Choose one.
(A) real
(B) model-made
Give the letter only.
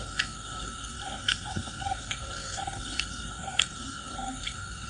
B